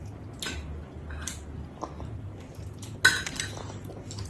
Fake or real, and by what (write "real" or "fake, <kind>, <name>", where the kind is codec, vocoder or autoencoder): real